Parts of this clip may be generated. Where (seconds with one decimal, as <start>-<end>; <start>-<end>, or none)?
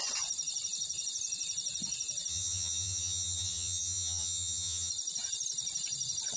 2.3-4.9